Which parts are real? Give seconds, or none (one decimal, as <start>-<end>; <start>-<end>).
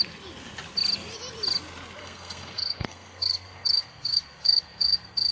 0.0-2.0